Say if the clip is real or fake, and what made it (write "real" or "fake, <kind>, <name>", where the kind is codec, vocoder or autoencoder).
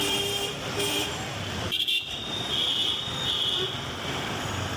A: fake, vocoder, BigVGAN v2